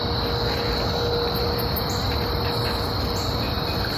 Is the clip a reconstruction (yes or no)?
no